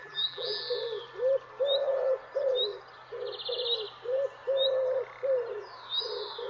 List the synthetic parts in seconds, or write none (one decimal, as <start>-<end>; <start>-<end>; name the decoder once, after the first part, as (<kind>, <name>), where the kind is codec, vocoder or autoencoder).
0.0-0.6 (vocoder, BigVGAN v2)